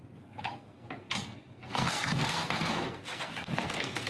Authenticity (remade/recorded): remade